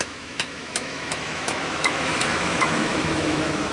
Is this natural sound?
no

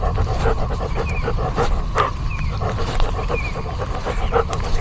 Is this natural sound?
yes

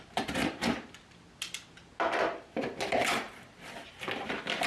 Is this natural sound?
yes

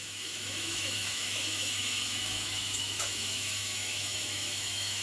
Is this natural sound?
no